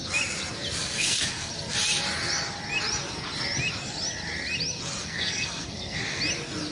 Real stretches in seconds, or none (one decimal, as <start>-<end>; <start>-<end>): 0.0-0.8; 1.5-5.0; 6.2-6.7

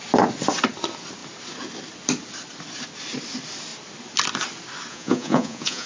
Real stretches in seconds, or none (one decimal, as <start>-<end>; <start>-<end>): 0.0-4.9

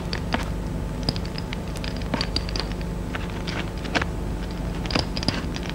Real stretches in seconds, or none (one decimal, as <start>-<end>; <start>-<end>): 0.0-5.7